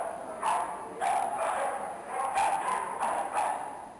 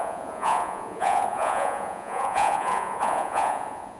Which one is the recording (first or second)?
first